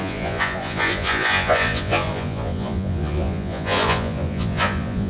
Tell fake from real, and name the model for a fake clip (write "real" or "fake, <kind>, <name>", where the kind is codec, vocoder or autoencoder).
fake, vocoder, Vocos